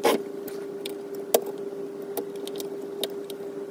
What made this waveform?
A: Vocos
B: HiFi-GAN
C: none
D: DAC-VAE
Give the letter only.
C